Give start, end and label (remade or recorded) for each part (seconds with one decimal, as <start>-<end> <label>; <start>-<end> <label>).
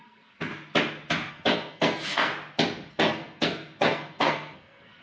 0.0-0.5 remade; 0.5-1.3 recorded; 1.3-2.3 remade; 2.3-2.9 recorded; 2.9-5.0 remade